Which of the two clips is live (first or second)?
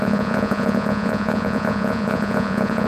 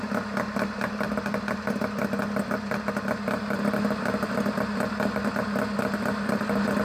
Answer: second